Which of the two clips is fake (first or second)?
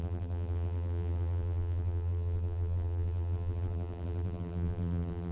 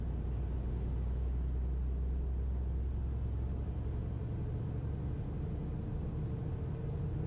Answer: first